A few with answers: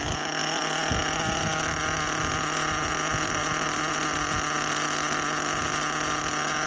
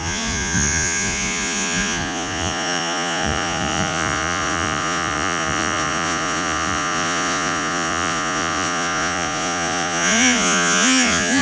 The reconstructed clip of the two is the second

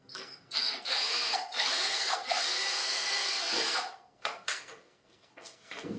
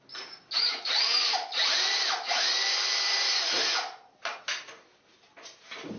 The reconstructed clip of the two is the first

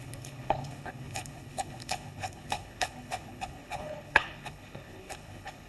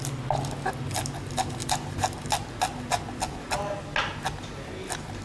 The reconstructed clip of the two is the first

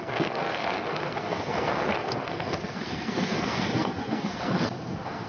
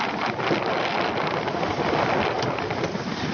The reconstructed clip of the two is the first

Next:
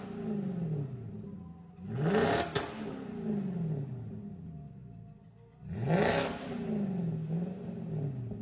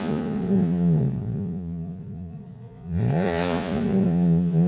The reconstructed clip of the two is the second